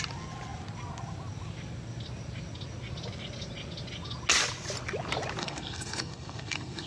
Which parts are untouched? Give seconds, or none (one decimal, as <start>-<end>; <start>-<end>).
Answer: 0.0-5.4